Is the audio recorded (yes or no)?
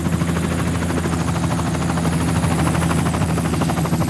yes